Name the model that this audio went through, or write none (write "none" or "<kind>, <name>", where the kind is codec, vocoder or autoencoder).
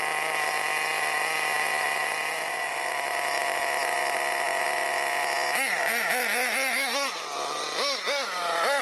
none